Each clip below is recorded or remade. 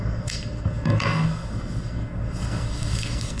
remade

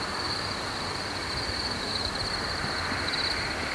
recorded